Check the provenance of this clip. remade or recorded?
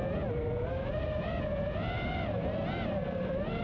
recorded